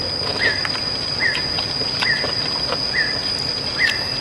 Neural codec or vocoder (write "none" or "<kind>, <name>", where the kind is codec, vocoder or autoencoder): none